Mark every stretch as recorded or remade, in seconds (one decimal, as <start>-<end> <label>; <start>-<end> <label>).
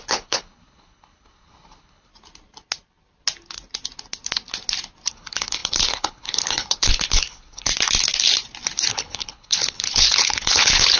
0.0-2.1 remade; 2.1-5.1 recorded; 5.1-7.7 remade; 7.7-8.9 recorded; 8.9-11.0 remade